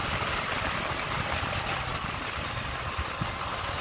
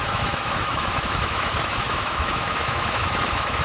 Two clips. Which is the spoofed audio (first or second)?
second